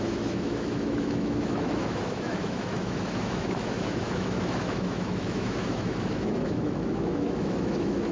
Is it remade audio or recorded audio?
remade